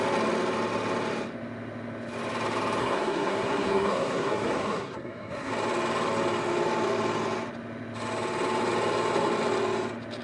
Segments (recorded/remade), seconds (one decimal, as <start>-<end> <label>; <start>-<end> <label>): 0.0-2.8 recorded; 2.8-5.5 remade; 5.5-10.2 recorded

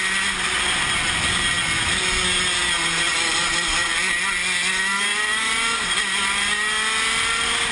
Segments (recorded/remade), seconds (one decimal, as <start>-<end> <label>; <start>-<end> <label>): 0.0-7.7 recorded

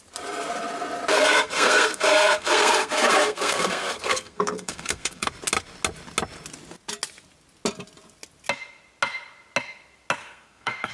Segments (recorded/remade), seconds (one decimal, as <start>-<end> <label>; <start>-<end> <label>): 0.0-1.1 recorded; 1.1-5.3 remade; 5.3-10.2 recorded; 10.2-10.9 remade

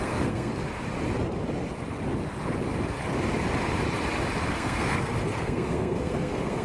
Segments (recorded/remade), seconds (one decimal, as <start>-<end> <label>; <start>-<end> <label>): 0.0-0.5 remade; 0.5-4.5 recorded; 4.5-6.6 remade

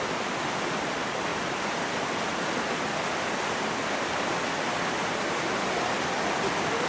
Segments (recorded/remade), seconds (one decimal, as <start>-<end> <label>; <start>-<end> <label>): 0.0-6.9 recorded

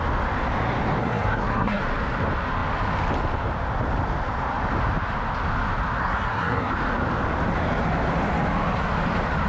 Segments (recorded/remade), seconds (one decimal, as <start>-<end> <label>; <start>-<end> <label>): 0.0-1.0 recorded; 1.0-1.8 remade; 1.8-6.0 recorded; 6.0-6.7 remade; 6.7-9.5 recorded